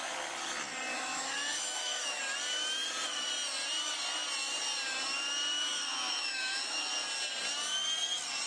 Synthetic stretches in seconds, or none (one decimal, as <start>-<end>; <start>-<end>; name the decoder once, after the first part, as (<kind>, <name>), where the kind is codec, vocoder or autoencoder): 0.9-2.2 (autoencoder, DAC-VAE); 5.7-6.9